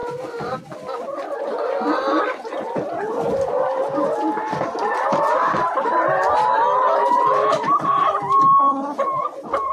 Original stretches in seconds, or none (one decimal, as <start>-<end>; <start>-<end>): 0.0-9.7